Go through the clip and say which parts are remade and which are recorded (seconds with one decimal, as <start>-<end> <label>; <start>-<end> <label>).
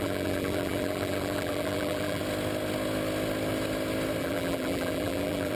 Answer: 0.0-2.2 remade; 2.2-4.2 recorded; 4.2-5.6 remade